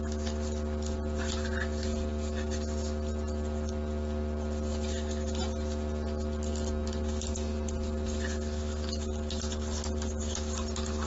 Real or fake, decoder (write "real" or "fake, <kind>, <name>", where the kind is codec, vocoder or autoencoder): real